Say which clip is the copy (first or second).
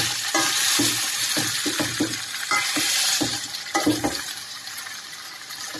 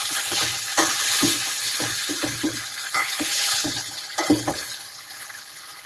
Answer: second